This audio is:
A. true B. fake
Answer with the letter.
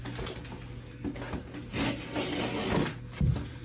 A